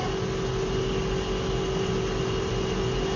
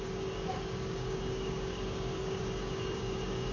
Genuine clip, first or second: first